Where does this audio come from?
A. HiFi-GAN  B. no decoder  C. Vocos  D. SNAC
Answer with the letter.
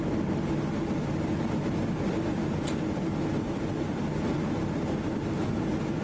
B